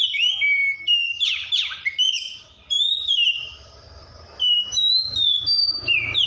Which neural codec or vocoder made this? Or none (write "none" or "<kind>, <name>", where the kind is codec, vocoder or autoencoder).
none